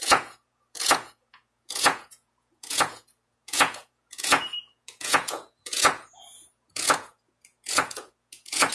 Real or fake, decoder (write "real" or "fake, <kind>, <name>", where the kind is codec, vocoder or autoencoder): fake, vocoder, Vocos